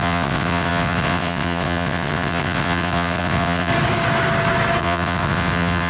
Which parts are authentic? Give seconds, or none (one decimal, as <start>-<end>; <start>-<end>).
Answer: 3.7-4.8

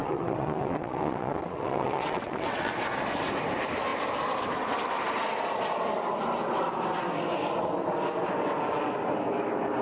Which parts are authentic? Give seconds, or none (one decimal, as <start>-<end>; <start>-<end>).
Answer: 2.7-9.8

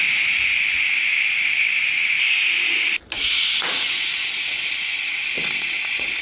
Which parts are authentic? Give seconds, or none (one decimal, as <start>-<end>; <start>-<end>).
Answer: 0.0-3.7

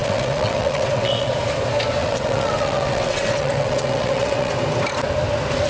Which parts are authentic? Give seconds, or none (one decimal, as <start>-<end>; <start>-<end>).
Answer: 1.3-2.0; 4.5-5.7